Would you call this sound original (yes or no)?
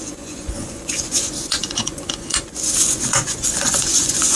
no